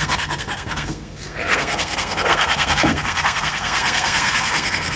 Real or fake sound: fake